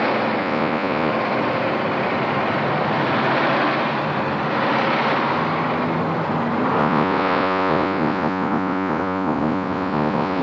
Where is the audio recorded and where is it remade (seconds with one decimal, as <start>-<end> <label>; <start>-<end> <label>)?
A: 0.0-0.4 recorded; 0.4-1.1 remade; 1.1-6.8 recorded; 6.8-10.4 remade

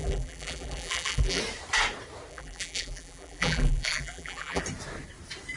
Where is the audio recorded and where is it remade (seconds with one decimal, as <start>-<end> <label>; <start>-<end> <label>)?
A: 0.0-1.4 remade; 1.4-2.3 recorded; 2.3-4.6 remade; 4.6-5.6 recorded

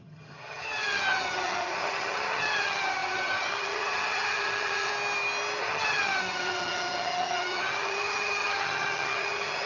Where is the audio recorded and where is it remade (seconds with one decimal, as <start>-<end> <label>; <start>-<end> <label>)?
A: 0.0-4.9 remade; 4.9-5.6 recorded; 5.6-9.7 remade

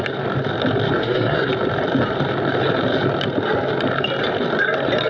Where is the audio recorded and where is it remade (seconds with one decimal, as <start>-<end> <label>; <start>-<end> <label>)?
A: 0.0-1.0 recorded; 1.0-1.5 remade; 1.5-5.1 recorded